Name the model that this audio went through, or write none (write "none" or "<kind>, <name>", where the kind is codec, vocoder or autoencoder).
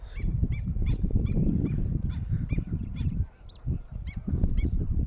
vocoder, BigVGAN v2